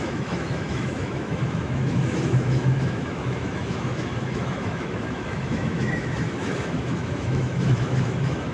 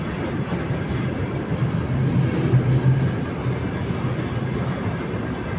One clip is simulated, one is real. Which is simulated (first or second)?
first